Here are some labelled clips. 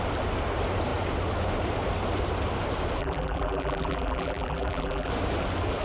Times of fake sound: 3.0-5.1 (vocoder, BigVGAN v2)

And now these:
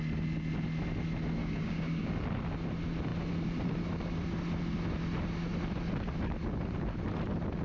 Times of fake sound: 1.4-2.1 (codec, DAC)